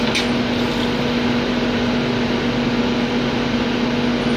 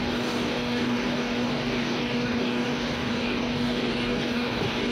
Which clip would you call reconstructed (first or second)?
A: second